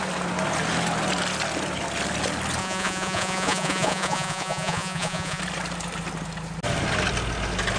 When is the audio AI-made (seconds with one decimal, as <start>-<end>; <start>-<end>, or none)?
2.6-5.4